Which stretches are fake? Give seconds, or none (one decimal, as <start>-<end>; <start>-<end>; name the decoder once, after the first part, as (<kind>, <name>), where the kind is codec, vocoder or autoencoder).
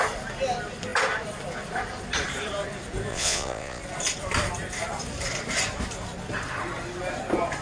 3.1-3.8 (vocoder, Vocos)